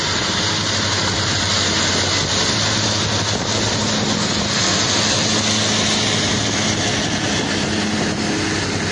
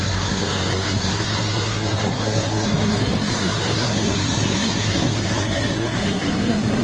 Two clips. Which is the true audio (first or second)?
first